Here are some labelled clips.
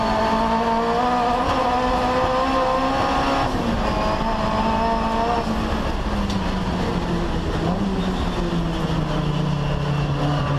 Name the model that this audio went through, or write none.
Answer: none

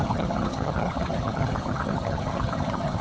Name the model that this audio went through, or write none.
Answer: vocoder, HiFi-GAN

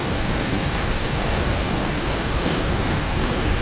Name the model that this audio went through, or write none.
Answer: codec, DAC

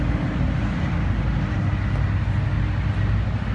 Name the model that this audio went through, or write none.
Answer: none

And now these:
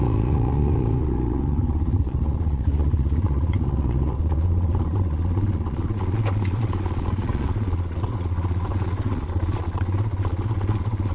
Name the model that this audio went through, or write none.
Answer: vocoder, Vocos